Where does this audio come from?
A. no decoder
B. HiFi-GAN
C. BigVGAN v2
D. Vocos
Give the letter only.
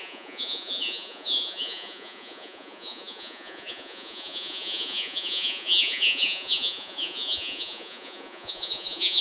D